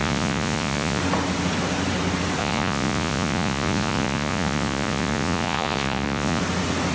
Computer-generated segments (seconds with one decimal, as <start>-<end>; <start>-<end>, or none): 0.0-1.0; 2.4-6.4